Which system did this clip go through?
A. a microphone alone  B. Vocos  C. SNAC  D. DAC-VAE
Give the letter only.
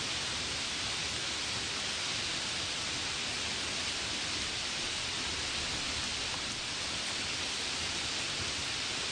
A